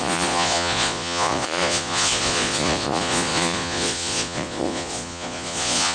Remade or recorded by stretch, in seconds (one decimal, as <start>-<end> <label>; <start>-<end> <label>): 0.0-5.9 remade